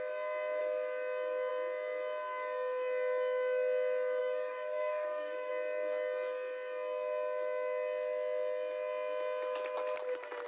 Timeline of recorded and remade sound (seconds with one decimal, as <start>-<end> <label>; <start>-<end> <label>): 0.0-4.2 recorded; 4.2-5.5 remade; 5.5-10.5 recorded